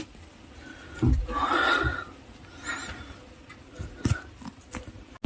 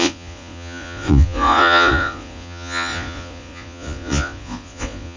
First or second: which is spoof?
second